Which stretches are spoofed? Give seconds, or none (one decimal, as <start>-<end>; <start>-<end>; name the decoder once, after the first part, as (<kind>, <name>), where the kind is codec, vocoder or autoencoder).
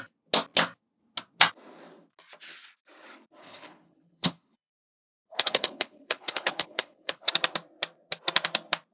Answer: 3.4-4.7 (codec, HILCodec); 5.3-7.3